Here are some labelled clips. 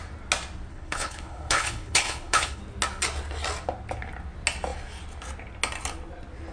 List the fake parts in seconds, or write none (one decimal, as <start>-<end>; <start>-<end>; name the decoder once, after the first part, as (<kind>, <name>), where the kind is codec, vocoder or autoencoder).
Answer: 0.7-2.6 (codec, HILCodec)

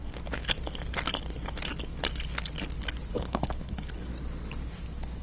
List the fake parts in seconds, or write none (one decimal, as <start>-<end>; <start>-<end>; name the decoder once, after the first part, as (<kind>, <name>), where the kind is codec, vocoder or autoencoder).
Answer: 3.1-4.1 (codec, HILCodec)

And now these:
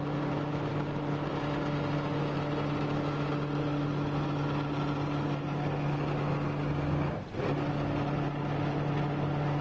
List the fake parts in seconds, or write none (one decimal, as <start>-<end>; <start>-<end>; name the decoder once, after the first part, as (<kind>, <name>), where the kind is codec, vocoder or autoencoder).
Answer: none